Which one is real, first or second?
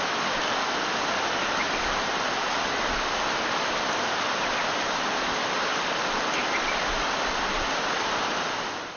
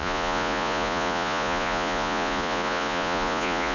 first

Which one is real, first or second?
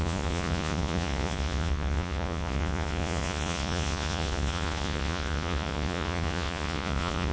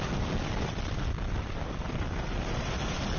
second